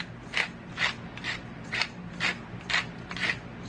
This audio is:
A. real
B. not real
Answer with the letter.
A